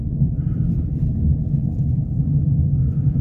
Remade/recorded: remade